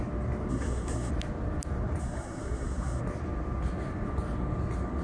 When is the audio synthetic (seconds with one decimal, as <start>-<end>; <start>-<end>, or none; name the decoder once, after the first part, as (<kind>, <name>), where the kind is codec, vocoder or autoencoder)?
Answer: 0.5-1.1 (codec, SNAC); 2.0-3.0